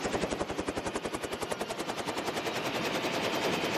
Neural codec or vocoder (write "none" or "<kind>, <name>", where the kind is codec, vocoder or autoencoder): none